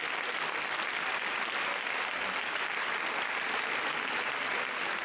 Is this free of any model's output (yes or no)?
yes